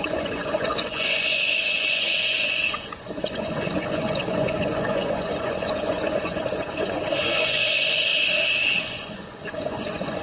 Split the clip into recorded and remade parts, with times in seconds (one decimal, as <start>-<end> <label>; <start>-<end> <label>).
0.0-8.1 remade; 8.1-8.8 recorded; 8.8-10.2 remade